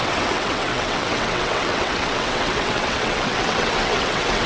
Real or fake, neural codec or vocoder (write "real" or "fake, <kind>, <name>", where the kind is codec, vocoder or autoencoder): fake, vocoder, WaveNeXt